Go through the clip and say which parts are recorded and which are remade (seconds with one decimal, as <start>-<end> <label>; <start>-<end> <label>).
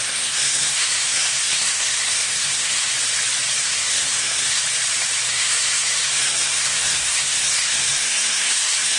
0.0-2.9 remade; 2.9-3.6 recorded; 3.6-4.6 remade; 4.6-5.3 recorded; 5.3-9.0 remade